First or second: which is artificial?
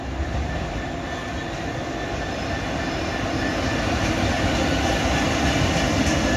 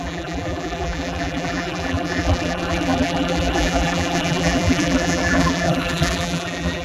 second